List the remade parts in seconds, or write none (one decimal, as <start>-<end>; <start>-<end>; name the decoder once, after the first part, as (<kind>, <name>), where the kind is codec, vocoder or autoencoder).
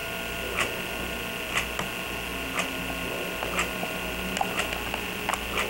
none